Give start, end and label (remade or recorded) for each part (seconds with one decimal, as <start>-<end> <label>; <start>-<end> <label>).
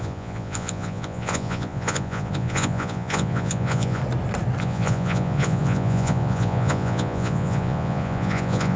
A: 0.0-4.0 remade; 4.0-4.6 recorded; 4.6-8.8 remade